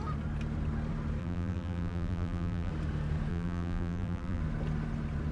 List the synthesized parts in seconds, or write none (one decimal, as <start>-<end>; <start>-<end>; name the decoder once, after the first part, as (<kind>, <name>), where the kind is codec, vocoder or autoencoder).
1.2-2.7 (vocoder, BigVGAN v2); 3.3-4.4

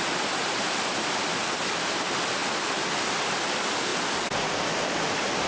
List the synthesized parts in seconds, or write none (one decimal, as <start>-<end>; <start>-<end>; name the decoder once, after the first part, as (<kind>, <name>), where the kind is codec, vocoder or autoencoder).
none

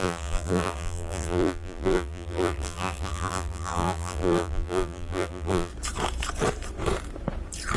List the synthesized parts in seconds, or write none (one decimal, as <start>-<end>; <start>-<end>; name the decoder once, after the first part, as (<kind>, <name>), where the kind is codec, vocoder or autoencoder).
0.0-5.7 (vocoder, BigVGAN v2)

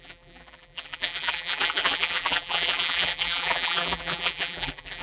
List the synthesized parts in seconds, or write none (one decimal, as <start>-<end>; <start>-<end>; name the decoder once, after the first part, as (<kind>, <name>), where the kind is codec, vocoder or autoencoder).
0.0-5.0 (vocoder, BigVGAN v2)

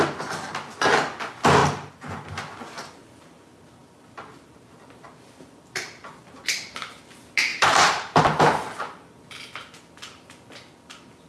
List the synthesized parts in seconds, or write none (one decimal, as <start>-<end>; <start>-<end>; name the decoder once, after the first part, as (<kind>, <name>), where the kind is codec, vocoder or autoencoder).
1.6-2.3 (vocoder, BigVGAN v2); 7.5-8.2

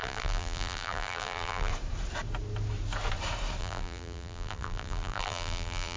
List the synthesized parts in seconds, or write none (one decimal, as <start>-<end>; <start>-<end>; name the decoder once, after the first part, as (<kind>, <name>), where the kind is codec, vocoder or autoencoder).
0.0-1.7 (vocoder, BigVGAN v2); 3.6-6.0

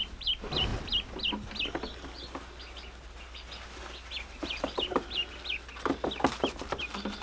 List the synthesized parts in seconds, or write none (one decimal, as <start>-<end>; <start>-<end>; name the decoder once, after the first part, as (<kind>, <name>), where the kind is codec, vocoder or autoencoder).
0.0-0.7 (vocoder, BigVGAN v2); 4.6-5.2; 6.8-7.2